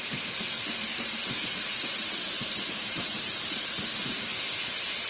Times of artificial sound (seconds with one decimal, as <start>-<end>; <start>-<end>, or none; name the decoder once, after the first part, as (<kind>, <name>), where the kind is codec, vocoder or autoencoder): 0.9-3.8 (vocoder, BigVGAN v2)